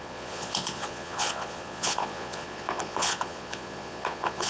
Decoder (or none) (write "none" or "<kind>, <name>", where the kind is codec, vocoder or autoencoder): vocoder, Vocos